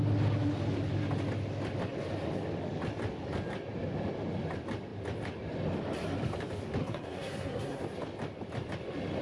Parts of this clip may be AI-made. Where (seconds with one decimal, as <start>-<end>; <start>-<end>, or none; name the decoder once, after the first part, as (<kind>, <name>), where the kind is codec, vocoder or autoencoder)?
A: 6.8-7.8 (codec, SNAC)